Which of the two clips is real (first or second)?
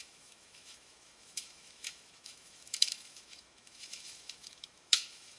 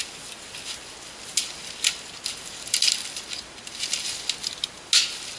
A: second